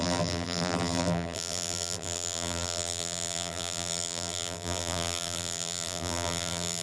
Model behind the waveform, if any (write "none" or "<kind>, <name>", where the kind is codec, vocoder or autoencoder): vocoder, BigVGAN v2